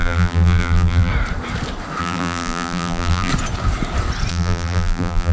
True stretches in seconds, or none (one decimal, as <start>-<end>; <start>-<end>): 1.1-2.0; 3.3-4.3